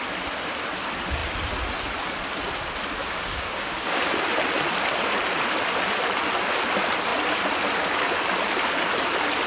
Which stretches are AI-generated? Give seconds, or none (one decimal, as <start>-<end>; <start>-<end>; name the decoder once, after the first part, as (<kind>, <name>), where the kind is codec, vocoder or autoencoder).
3.0-4.0 (codec, DAC)